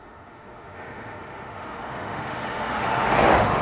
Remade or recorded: remade